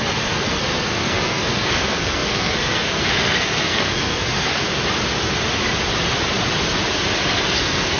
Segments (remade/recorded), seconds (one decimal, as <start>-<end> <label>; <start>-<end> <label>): 0.0-4.7 remade; 4.7-7.4 recorded; 7.4-8.0 remade